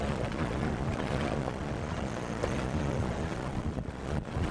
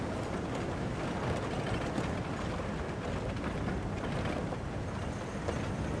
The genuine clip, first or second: second